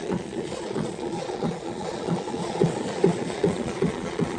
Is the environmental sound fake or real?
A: fake